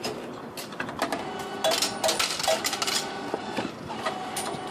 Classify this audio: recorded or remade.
recorded